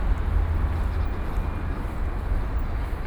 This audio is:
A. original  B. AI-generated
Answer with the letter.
A